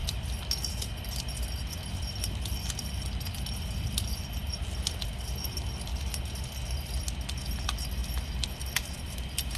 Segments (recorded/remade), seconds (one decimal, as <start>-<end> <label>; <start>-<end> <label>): 0.0-9.6 recorded